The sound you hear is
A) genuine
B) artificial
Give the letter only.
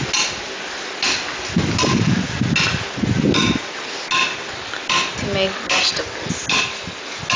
A